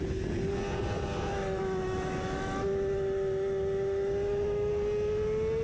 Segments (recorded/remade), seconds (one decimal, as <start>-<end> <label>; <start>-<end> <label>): 0.0-1.3 recorded; 1.3-4.7 remade; 4.7-5.6 recorded